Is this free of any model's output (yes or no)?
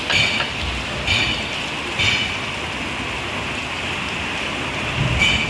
yes